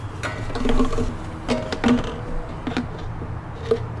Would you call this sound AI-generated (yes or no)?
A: no